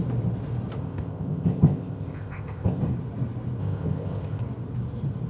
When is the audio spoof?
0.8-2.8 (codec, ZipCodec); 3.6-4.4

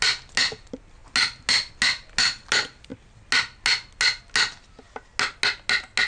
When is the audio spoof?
none

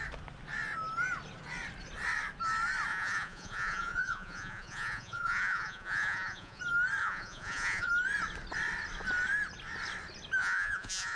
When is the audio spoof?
2.9-6.6 (vocoder, Vocos); 7.0-7.9; 10.4-11.2

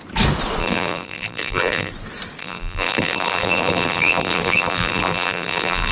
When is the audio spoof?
0.6-1.9 (vocoder, BigVGAN v2); 2.4-5.9

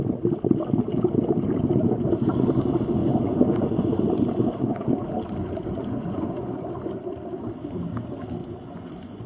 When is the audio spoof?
3.0-3.9 (vocoder, Vocos); 5.4-6.5; 8.4-9.3

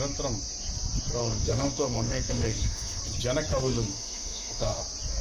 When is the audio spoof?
1.2-3.0 (autoencoder, DAC-VAE); 3.5-4.8

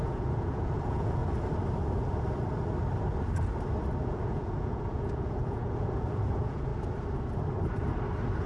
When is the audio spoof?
0.0-1.2 (vocoder, Vocos); 4.0-6.7

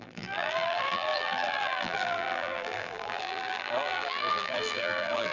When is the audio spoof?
0.0-5.3 (vocoder, BigVGAN v2)